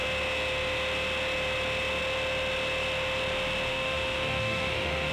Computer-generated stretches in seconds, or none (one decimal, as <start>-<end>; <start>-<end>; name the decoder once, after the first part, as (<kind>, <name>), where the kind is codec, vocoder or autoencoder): 3.7-5.1 (autoencoder, DAC-VAE)